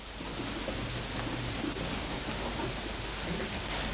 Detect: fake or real real